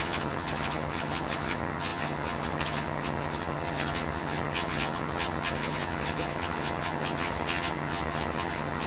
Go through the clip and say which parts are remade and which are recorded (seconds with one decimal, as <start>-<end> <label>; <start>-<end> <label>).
0.0-8.9 remade